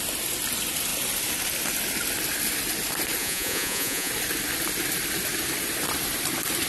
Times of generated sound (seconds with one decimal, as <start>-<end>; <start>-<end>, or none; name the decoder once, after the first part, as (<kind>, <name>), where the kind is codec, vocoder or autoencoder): 3.2-4.1 (vocoder, Vocos)